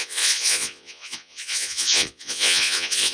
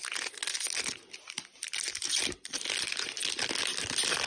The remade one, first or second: first